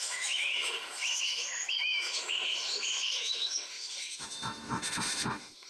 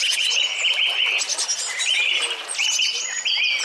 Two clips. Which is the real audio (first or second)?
second